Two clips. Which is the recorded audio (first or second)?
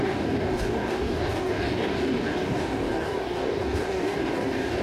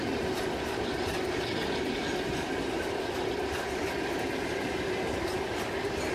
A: second